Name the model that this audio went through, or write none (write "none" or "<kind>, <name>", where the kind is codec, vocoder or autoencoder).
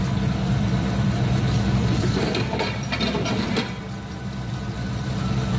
none